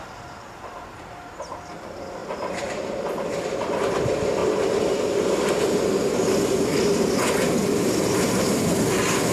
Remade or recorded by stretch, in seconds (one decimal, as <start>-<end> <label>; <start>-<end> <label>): 0.0-9.3 recorded